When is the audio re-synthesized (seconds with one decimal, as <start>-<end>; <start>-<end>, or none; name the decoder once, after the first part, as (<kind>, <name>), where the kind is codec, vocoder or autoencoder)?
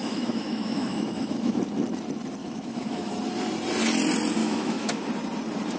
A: 0.0-1.6 (autoencoder, DAC-VAE); 2.4-3.1; 4.4-5.0